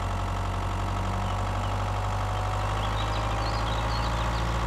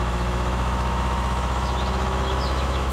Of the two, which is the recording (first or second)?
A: first